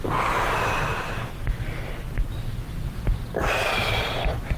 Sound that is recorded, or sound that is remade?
recorded